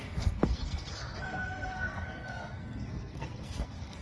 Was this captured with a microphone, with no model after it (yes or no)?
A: no